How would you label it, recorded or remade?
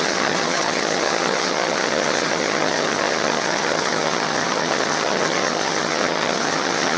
remade